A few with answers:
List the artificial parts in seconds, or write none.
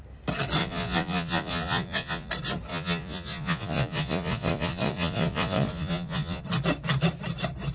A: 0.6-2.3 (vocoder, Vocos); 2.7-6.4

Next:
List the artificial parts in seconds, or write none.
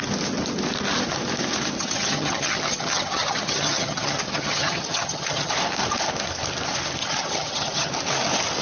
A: 1.8-5.5 (vocoder, HiFi-GAN); 7.0-7.9